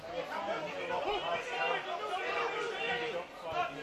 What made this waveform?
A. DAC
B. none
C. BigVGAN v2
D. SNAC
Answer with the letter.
B